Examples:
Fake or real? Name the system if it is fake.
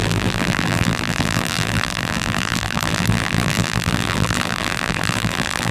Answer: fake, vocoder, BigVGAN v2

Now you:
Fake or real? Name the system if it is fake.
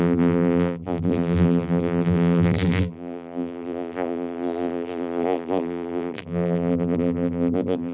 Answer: fake, vocoder, BigVGAN v2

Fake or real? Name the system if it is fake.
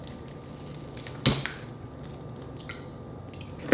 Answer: real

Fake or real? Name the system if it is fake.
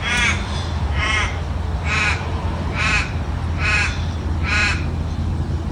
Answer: real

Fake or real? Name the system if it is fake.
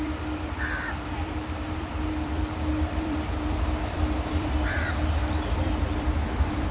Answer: fake, vocoder, BigVGAN v2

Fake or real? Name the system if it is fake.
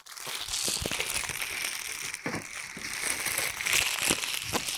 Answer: real